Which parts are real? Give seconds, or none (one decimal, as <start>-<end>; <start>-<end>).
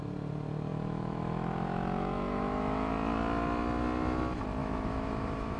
0.0-0.7; 2.9-4.6